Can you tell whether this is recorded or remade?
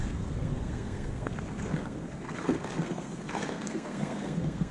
remade